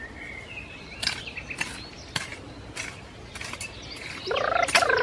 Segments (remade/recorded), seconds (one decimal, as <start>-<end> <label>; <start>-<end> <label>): 0.0-5.0 recorded